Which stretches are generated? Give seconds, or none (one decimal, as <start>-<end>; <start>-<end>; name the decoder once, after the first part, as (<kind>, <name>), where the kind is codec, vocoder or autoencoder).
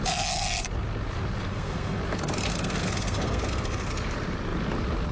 1.5-2.0 (codec, SNAC); 2.5-3.9